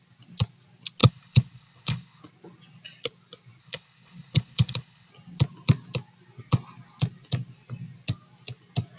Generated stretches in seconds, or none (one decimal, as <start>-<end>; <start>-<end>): 1.0-2.2; 3.6-5.1